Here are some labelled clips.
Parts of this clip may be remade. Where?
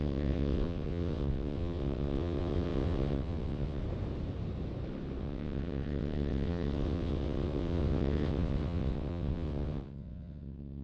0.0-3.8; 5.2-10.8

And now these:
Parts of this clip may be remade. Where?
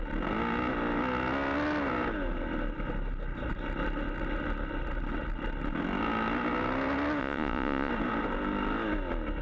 7.2-7.9